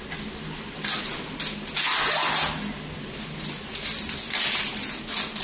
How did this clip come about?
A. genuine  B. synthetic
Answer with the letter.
A